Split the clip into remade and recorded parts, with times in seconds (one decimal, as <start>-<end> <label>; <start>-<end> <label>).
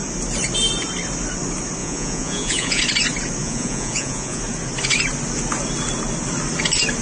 0.0-1.8 recorded; 1.8-2.8 remade; 2.8-3.4 recorded; 3.4-4.4 remade; 4.4-7.0 recorded